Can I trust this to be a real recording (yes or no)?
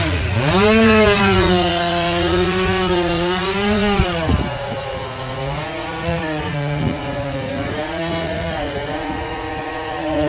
no